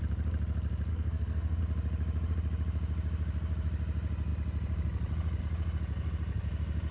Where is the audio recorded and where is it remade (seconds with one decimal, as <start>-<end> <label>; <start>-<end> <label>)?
0.0-0.9 recorded; 0.9-1.6 remade; 1.6-6.9 recorded